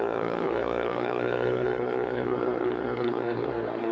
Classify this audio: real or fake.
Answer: fake